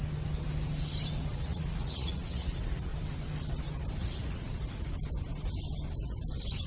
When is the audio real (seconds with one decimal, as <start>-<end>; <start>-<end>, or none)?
0.0-1.3; 2.9-4.0; 4.5-6.7